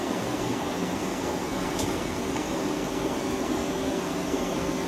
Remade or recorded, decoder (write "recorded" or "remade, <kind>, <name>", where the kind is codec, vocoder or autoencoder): remade, codec, SNAC